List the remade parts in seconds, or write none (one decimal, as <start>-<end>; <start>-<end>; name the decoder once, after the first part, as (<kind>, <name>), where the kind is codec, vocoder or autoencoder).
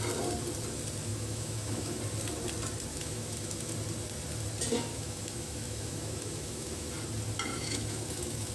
1.1-2.0 (autoencoder, DAC-VAE); 2.9-3.7; 4.9-6.9; 7.5-8.5